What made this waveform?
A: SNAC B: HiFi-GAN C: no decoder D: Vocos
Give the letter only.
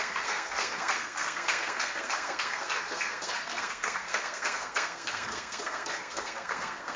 A